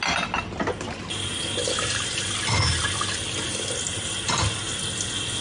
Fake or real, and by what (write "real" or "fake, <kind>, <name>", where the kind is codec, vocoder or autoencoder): real